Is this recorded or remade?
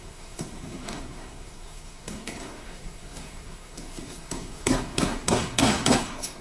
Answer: remade